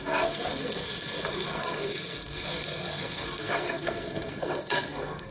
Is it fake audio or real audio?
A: fake